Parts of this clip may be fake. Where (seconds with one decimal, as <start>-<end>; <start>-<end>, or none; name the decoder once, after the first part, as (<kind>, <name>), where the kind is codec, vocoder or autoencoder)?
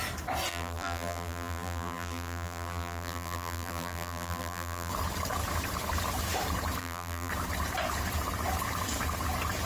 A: 0.5-4.9 (vocoder, BigVGAN v2); 6.8-7.3